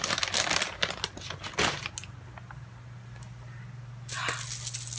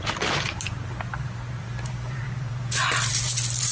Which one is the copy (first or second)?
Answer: second